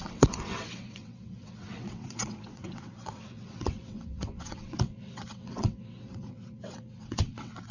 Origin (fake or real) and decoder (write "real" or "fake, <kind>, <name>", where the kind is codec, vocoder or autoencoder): fake, vocoder, WaveNeXt